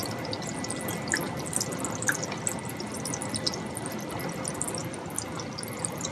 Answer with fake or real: real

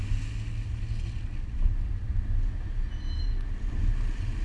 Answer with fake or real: real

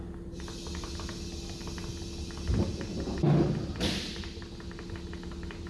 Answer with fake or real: real